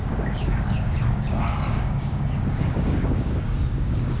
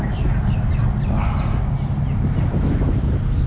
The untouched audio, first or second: second